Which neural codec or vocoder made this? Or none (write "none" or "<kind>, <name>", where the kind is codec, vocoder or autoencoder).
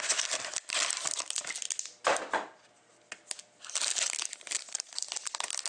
none